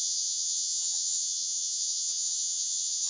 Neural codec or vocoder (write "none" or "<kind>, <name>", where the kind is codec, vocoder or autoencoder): vocoder, HiFi-GAN